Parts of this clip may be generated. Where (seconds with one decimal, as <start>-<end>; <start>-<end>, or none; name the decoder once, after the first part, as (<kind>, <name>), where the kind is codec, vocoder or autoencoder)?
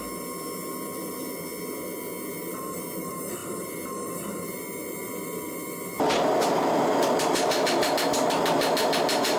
5.0-7.9 (vocoder, BigVGAN v2)